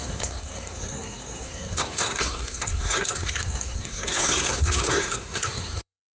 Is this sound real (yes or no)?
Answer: no